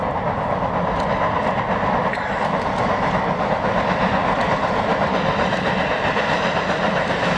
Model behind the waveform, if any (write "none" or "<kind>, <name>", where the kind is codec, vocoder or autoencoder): none